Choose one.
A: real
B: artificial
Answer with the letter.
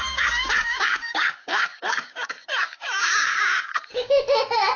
B